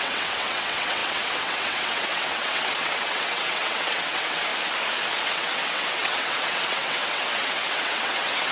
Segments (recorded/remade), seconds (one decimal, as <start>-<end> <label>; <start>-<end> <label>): 0.0-4.5 remade; 4.5-5.2 recorded; 5.2-8.5 remade